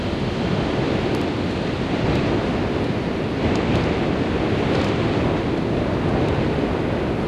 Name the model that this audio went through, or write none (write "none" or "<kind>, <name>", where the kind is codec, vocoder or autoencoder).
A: none